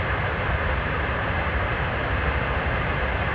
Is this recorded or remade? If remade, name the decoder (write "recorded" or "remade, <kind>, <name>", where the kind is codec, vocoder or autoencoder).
recorded